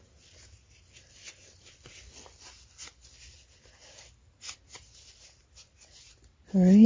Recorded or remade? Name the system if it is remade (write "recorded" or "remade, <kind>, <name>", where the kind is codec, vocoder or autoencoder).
recorded